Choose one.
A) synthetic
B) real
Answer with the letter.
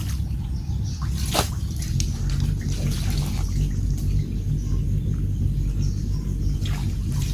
B